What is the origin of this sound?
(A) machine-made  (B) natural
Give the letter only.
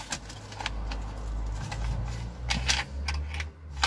B